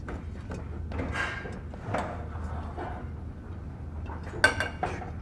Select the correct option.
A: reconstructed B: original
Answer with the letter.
B